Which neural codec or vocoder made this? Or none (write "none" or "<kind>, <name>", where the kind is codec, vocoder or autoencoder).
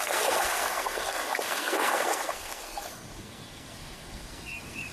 codec, SNAC